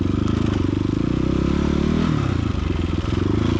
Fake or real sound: real